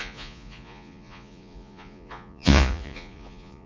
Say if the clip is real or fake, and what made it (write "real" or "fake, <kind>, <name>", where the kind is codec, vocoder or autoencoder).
fake, vocoder, Vocos